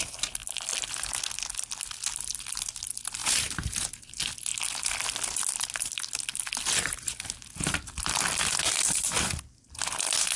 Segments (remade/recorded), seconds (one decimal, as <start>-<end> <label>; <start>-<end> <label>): 0.0-3.2 recorded; 3.2-4.1 remade; 4.1-10.4 recorded